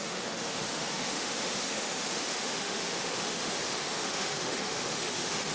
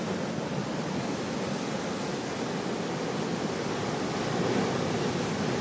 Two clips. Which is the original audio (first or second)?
second